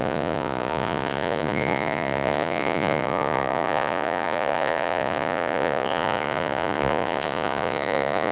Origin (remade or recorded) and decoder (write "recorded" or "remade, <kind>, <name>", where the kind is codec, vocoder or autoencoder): remade, vocoder, Vocos